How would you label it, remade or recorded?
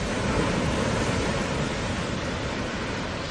remade